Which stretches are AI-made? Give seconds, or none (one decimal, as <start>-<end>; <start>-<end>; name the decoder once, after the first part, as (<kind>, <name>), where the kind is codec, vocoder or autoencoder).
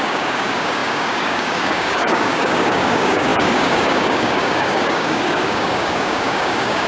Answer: 0.0-6.9 (codec, DAC)